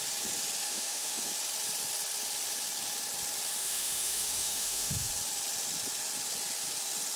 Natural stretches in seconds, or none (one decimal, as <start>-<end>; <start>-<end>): 0.0-0.6; 1.3-3.6; 5.1-7.2